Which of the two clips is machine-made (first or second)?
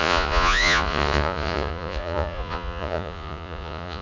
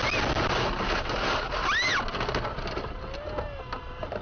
first